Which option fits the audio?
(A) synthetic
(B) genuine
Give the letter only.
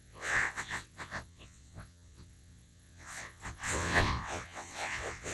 A